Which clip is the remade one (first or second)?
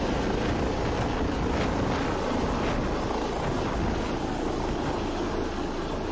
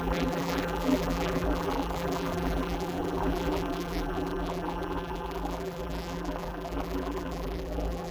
second